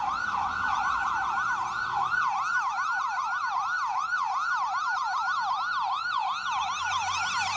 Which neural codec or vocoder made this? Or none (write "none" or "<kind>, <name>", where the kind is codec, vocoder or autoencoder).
none